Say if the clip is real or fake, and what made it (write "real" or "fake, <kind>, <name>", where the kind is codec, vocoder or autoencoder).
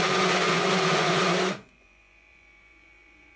fake, vocoder, Vocos